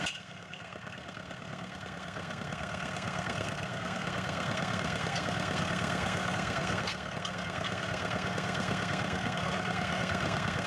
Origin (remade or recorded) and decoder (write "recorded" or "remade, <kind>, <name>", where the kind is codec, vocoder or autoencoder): remade, codec, SNAC